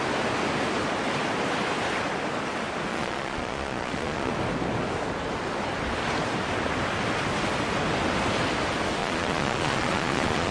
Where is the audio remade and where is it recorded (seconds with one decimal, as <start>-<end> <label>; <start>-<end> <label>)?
0.0-2.9 recorded; 2.9-4.3 remade; 4.3-9.0 recorded; 9.0-10.5 remade